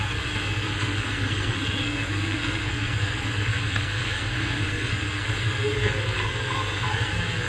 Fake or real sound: fake